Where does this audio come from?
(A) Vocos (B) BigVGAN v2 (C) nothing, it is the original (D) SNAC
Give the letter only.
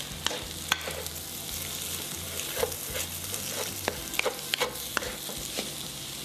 C